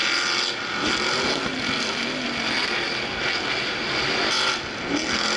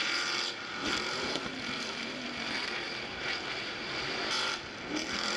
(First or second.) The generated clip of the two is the second